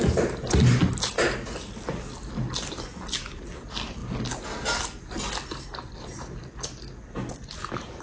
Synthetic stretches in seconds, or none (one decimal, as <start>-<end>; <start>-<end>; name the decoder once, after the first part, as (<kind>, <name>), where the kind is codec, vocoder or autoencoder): none